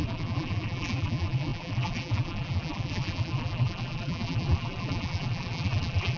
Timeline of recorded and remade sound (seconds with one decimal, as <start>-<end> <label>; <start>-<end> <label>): 0.0-6.2 remade